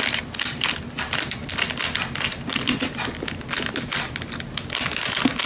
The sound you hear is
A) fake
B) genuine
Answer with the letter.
B